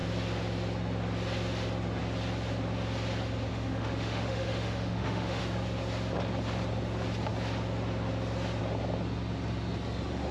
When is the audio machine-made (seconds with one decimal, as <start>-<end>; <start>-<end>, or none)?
3.5-5.4